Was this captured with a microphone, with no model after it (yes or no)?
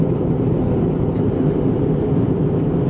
no